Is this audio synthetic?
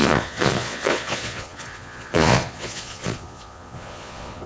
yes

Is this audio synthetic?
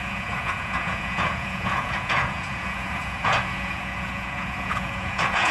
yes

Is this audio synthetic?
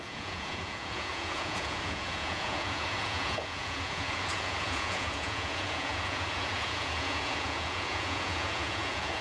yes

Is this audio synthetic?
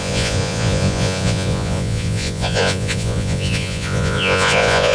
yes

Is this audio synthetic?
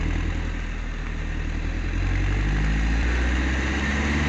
no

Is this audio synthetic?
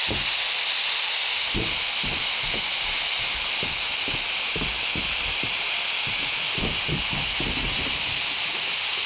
no